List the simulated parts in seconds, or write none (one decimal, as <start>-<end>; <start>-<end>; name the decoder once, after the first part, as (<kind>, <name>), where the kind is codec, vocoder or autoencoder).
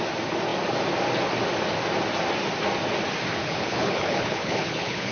3.4-5.1 (codec, HILCodec)